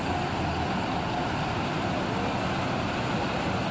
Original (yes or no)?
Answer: yes